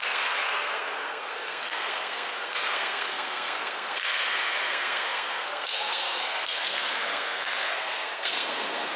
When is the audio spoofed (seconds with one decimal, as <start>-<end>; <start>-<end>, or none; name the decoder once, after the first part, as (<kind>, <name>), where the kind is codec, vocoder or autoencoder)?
0.0-9.0 (codec, SNAC)